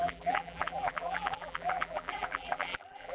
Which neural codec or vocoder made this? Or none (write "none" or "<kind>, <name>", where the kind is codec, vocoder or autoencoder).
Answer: vocoder, BigVGAN v2